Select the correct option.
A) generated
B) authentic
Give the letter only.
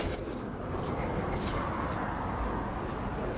B